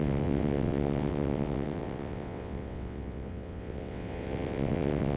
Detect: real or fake fake